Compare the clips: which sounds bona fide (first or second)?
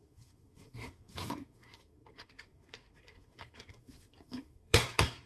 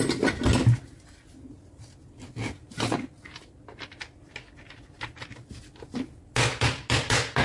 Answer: second